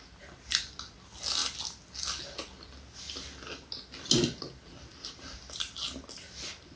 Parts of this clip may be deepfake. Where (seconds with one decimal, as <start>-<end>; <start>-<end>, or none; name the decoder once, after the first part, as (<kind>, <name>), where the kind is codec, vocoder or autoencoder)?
none